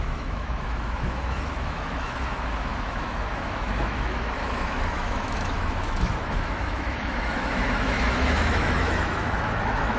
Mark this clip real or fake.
fake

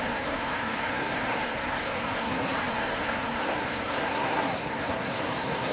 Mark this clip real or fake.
fake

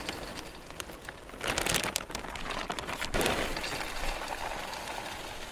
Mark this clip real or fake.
real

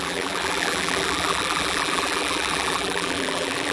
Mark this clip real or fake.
fake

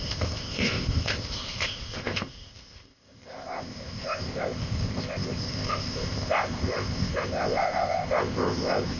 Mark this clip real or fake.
fake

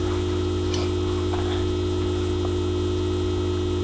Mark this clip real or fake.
real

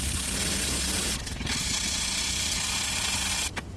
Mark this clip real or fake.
real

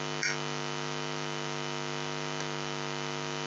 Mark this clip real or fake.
real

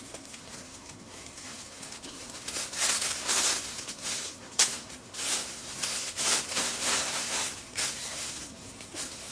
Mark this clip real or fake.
fake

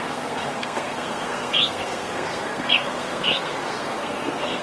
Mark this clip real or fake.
fake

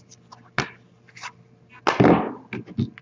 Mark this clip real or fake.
real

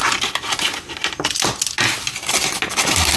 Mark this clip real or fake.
real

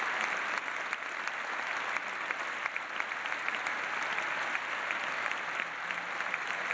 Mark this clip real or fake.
real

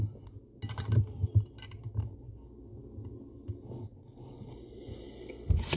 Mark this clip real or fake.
real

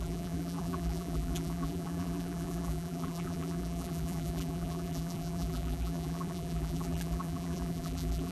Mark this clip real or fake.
fake